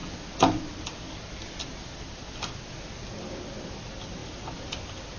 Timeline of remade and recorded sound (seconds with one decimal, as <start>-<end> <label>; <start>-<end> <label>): 0.0-5.2 recorded